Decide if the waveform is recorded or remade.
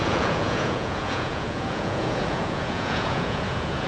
remade